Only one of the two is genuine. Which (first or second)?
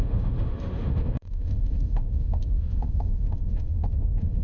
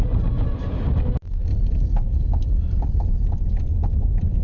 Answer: second